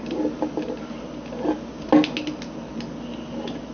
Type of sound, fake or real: real